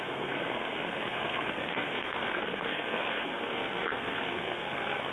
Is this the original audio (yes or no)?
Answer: no